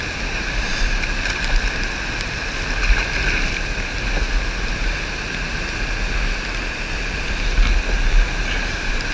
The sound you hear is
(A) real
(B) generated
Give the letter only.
A